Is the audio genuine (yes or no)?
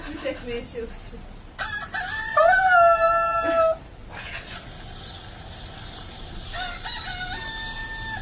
yes